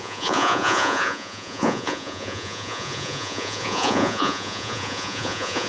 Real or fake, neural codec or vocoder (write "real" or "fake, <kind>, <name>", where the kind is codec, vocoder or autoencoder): fake, vocoder, Vocos